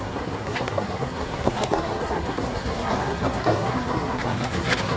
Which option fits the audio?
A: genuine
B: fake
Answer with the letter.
B